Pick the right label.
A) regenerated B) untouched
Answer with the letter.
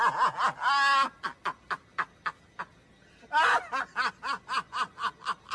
B